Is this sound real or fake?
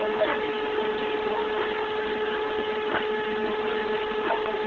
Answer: real